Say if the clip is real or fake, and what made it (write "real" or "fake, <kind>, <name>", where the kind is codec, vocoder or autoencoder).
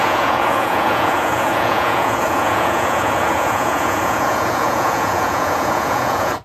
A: fake, vocoder, Vocos